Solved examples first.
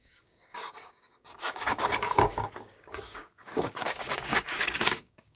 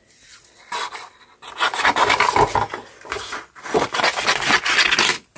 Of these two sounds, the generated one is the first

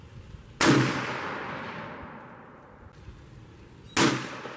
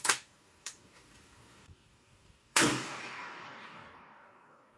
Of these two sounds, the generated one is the second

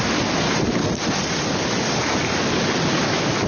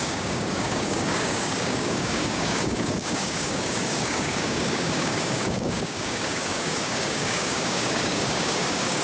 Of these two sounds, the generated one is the second